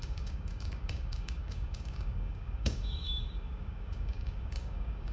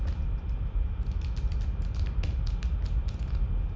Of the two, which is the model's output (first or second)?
first